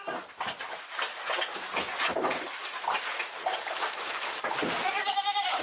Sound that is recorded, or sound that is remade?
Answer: recorded